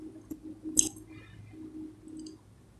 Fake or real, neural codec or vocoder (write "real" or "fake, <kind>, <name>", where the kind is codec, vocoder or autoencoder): real